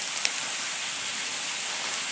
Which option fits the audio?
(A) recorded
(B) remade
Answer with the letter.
A